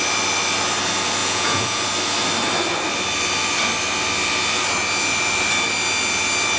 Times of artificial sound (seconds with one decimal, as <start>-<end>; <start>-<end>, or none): 1.2-1.8